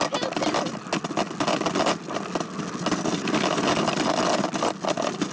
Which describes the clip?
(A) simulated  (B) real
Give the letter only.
B